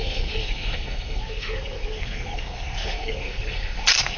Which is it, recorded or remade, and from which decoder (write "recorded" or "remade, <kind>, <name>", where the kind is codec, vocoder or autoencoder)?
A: remade, codec, SNAC